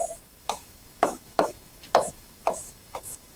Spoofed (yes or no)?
yes